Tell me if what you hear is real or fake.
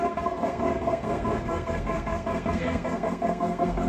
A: fake